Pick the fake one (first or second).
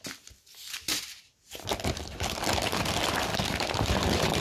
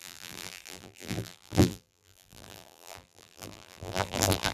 second